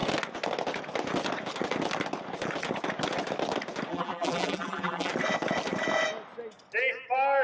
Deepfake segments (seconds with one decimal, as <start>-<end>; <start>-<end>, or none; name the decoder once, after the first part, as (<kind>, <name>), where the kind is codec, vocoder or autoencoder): 3.9-5.1 (vocoder, BigVGAN v2)